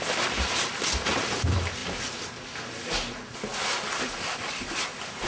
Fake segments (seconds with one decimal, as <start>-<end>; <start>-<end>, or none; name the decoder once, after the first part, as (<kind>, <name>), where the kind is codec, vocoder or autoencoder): 0.0-1.8 (vocoder, BigVGAN v2); 4.4-5.3